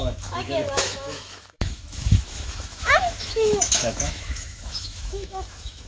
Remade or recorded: remade